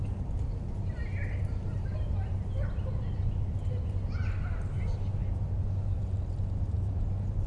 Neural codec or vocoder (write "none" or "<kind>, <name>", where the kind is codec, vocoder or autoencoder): none